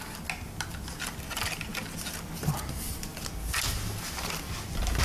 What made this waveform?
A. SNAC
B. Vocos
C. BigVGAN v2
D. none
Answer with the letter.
D